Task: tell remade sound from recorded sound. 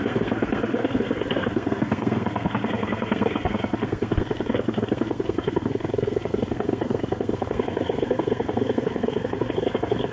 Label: remade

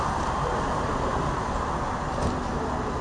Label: remade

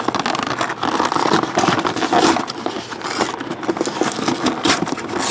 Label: recorded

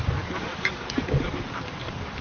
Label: remade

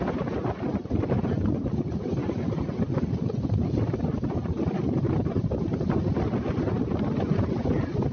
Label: recorded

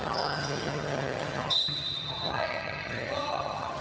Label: remade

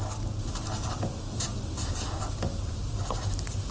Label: recorded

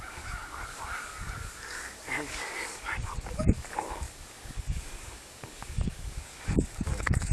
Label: remade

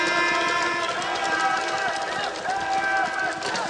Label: recorded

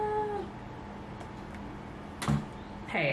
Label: recorded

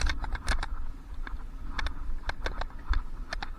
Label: recorded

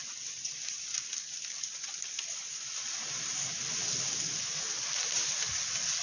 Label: recorded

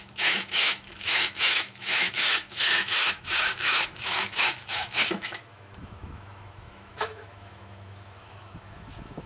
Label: remade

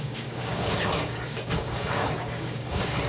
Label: remade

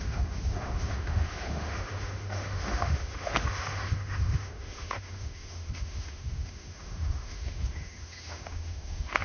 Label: remade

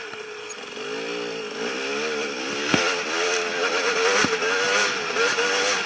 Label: recorded